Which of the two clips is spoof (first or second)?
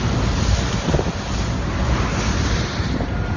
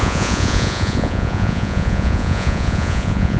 second